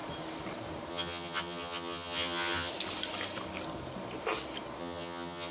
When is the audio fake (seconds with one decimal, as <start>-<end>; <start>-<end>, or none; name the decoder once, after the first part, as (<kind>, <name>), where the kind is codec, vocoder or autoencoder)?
0.9-2.7 (vocoder, HiFi-GAN); 4.8-5.5